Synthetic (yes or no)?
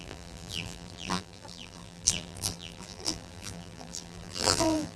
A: yes